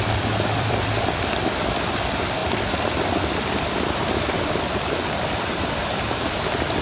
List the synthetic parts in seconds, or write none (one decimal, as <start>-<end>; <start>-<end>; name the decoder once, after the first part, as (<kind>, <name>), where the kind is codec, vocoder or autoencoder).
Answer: 0.0-6.8 (vocoder, BigVGAN v2)